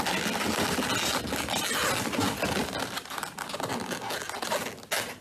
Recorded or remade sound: recorded